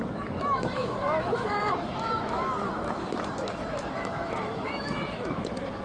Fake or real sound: fake